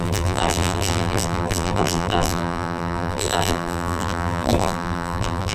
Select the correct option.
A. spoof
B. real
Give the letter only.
A